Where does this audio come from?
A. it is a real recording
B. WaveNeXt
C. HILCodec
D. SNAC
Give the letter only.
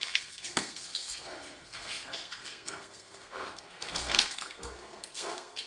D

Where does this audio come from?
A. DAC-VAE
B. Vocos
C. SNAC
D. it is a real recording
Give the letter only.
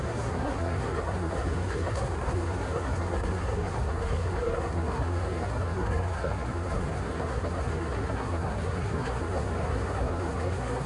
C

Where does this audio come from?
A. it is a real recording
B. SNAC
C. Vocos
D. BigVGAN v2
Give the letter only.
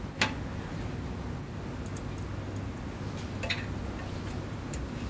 A